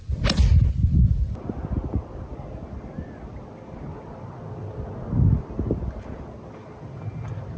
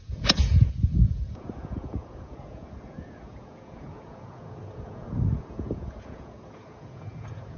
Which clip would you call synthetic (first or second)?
second